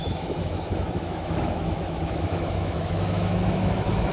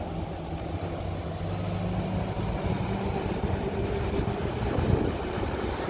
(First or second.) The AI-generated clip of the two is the first